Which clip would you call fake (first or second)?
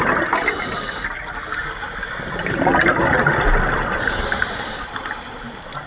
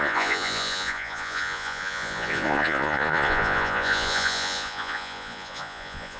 second